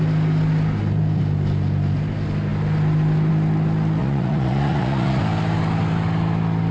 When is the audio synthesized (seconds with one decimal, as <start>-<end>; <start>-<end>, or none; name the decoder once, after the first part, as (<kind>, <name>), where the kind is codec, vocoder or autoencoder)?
4.0-5.2 (vocoder, Vocos)